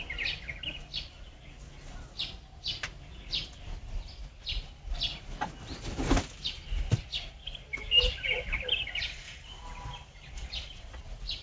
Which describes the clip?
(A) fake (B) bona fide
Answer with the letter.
B